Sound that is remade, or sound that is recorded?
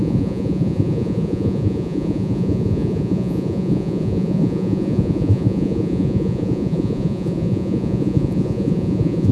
remade